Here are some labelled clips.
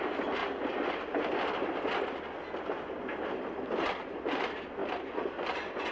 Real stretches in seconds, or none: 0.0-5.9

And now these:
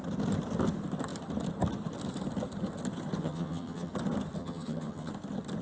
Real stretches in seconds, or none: 0.0-3.2; 3.9-4.4; 5.1-5.6

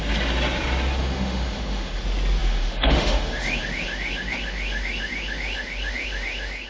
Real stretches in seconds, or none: 0.0-1.0; 2.0-2.4

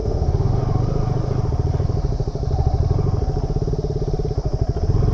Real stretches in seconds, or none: 0.6-5.1

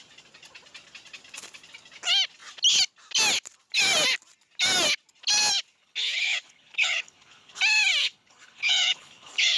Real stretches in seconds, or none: 0.0-5.8; 7.6-8.0

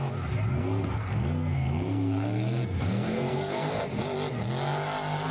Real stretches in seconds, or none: 0.0-0.5; 3.7-5.3

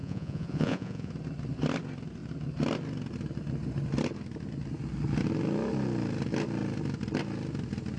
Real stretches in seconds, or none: 1.1-8.0

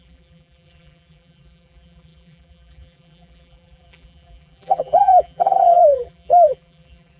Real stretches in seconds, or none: none